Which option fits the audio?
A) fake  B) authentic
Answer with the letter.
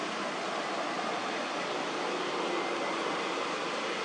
B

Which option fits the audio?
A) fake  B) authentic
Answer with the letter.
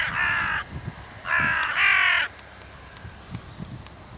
B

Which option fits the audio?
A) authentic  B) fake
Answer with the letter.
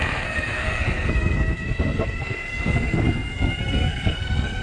B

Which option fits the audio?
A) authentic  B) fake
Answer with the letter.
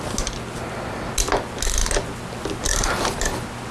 A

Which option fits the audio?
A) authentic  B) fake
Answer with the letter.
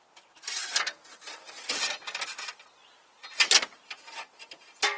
A